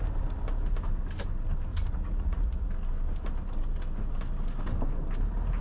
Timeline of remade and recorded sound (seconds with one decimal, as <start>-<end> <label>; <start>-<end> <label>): 0.0-1.7 recorded; 1.7-2.7 remade; 2.7-5.6 recorded